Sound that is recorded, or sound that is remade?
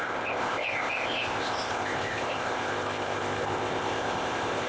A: remade